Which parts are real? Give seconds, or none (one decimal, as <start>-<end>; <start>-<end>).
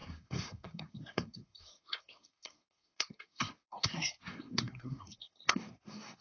none